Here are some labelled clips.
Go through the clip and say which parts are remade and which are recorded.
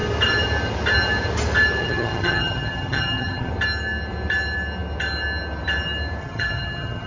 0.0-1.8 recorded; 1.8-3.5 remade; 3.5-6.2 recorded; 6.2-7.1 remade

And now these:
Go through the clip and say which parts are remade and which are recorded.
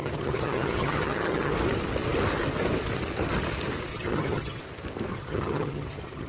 0.0-1.5 remade; 1.5-3.9 recorded; 3.9-4.6 remade; 4.6-5.1 recorded; 5.1-6.3 remade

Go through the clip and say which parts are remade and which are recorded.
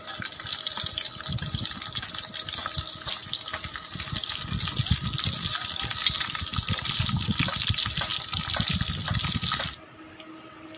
0.0-10.8 recorded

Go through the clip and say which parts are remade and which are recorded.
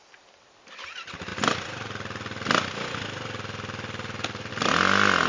0.0-5.3 recorded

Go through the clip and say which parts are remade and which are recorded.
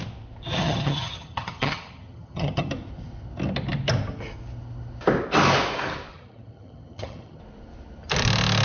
0.0-0.6 recorded; 0.6-2.7 remade; 2.7-6.1 recorded; 6.1-7.4 remade; 7.4-8.6 recorded